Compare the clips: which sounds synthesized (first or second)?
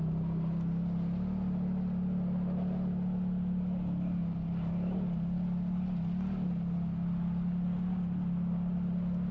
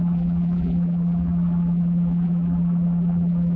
second